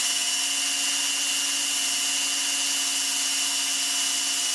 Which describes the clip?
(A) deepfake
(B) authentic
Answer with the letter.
B